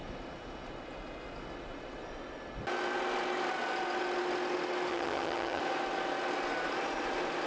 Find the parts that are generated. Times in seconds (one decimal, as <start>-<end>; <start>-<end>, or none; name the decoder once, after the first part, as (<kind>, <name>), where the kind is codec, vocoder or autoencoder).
4.9-5.6 (vocoder, HiFi-GAN)